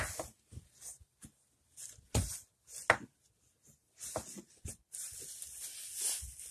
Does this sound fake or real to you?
real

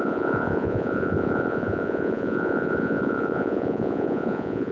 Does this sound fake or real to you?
fake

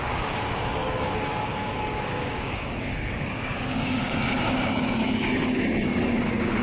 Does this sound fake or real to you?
fake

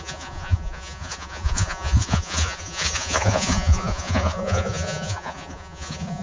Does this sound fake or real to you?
fake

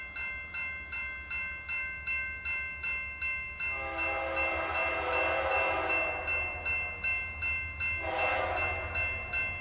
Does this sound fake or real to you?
real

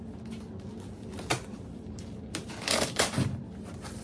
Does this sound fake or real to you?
real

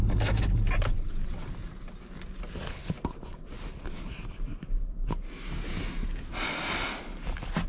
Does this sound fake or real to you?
real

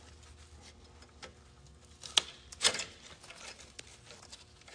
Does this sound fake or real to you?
real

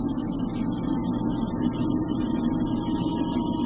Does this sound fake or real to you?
real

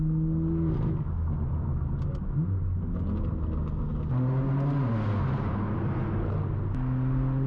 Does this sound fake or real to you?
real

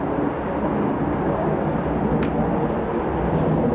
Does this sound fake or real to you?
real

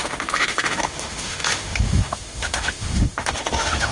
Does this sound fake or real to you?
fake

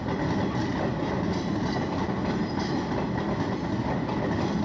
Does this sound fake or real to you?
real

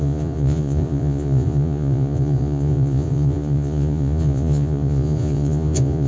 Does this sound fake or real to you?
fake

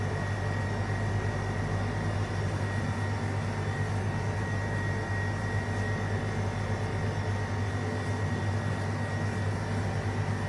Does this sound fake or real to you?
real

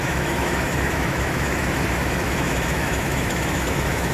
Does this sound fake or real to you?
fake